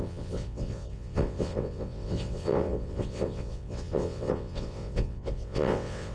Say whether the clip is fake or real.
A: fake